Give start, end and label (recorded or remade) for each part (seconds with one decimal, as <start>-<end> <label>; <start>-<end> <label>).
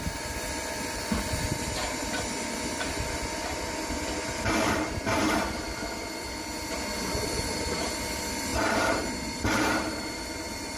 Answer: 0.0-10.8 remade